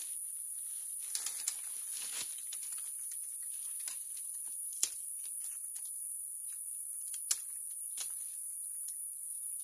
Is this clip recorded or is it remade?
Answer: recorded